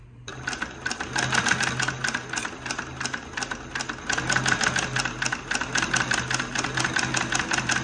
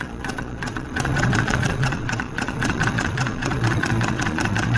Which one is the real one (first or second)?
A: first